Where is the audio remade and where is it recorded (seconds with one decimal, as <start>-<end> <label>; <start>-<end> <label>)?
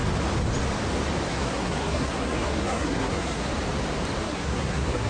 0.0-1.3 recorded; 1.3-3.5 remade; 3.5-4.2 recorded; 4.2-5.1 remade